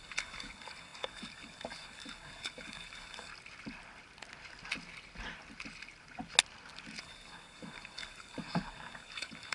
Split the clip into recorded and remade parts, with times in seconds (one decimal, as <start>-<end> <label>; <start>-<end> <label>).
0.0-3.3 remade; 3.3-7.0 recorded; 7.0-9.5 remade